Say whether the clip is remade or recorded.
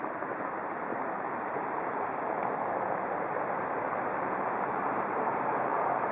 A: remade